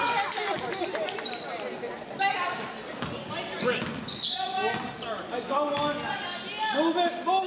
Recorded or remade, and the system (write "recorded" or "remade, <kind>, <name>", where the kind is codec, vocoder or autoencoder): recorded